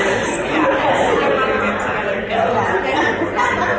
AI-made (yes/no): no